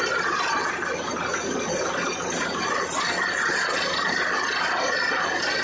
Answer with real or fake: real